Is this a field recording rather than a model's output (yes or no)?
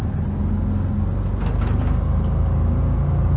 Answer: yes